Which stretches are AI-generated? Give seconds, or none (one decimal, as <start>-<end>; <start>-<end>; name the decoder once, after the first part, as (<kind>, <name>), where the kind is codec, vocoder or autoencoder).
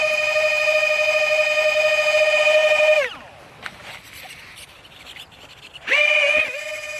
none